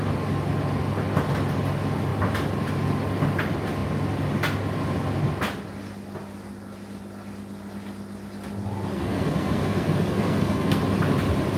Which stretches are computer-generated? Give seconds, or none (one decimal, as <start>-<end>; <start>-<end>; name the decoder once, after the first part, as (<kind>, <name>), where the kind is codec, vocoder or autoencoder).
8.9-10.8 (codec, SNAC)